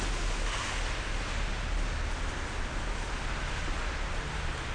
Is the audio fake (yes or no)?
no